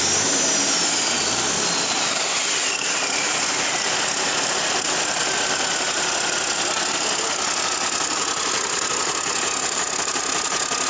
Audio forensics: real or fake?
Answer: real